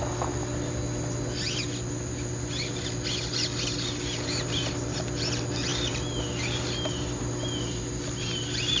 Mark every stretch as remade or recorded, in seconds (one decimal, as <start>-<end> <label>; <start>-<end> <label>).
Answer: 0.0-8.8 recorded